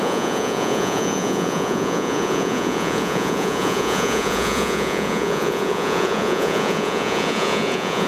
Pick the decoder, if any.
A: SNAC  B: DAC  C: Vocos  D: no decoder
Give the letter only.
C